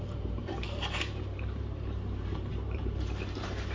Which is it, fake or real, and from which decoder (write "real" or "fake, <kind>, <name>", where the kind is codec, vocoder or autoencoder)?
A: fake, vocoder, BigVGAN v2